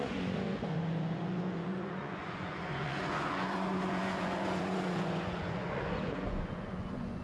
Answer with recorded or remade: remade